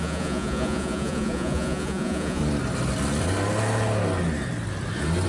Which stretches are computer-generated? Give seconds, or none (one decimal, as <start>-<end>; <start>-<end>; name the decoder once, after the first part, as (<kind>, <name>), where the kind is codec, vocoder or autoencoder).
0.0-2.4 (vocoder, Vocos)